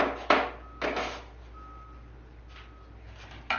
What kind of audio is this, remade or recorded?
recorded